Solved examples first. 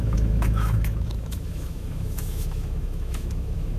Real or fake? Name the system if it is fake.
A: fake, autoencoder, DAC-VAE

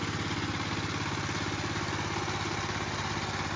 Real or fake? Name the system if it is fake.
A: real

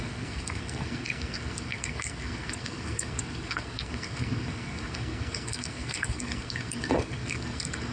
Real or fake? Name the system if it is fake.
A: fake, codec, SNAC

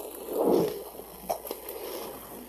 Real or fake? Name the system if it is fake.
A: real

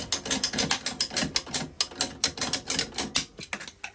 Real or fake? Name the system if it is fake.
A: real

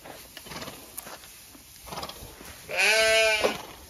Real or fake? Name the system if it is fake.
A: real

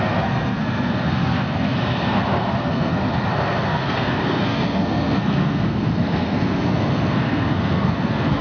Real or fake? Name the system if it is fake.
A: fake, codec, SNAC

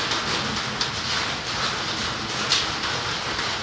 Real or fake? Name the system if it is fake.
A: real